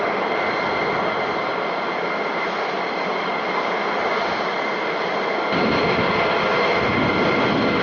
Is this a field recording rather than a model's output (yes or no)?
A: yes